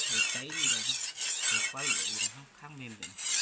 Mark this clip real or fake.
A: real